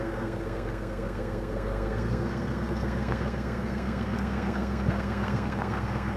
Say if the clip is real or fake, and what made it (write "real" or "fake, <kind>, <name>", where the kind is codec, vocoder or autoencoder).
fake, codec, SNAC